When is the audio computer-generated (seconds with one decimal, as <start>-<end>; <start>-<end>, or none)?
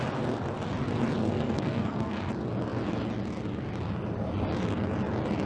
1.2-2.3